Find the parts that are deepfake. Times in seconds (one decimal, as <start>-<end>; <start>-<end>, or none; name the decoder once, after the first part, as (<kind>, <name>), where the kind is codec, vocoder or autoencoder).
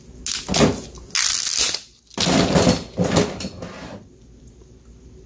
none